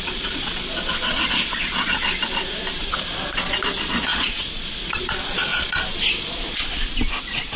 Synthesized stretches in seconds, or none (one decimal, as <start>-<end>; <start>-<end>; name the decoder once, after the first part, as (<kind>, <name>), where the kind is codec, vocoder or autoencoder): 0.0-2.2 (vocoder, Vocos); 2.8-7.6

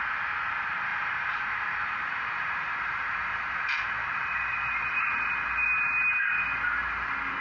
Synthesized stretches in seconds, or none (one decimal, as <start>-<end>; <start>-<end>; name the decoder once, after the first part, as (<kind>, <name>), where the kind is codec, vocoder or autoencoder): 0.9-5.3 (vocoder, BigVGAN v2)